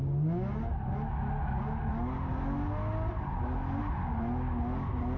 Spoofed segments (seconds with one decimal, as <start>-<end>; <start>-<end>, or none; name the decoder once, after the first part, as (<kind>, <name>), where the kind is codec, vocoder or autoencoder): none